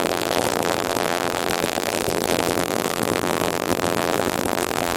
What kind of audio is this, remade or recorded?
remade